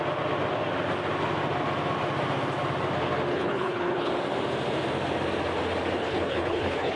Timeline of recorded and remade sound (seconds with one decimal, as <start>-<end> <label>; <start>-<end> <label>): 0.0-3.3 recorded; 3.3-4.1 remade; 4.1-6.0 recorded; 6.0-7.0 remade

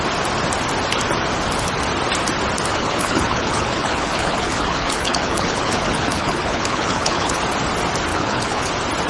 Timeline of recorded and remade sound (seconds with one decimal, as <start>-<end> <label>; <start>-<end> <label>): 0.0-2.7 recorded; 2.7-7.4 remade; 7.4-8.1 recorded; 8.1-8.7 remade; 8.7-9.1 recorded

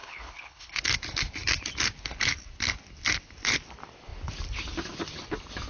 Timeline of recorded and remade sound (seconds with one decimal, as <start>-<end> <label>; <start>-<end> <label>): 0.0-0.8 remade; 0.8-5.7 recorded

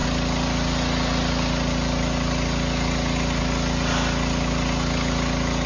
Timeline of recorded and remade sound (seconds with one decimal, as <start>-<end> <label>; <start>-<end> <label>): 0.0-5.7 recorded